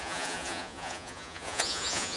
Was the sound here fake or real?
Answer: fake